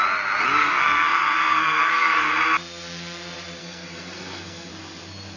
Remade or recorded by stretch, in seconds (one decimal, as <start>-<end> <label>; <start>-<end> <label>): 0.0-0.6 recorded; 0.6-2.3 remade; 2.3-3.6 recorded; 3.6-4.7 remade; 4.7-5.4 recorded